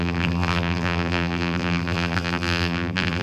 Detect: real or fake fake